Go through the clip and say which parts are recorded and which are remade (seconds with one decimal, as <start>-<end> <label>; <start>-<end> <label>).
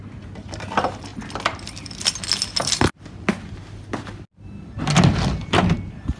0.0-6.2 recorded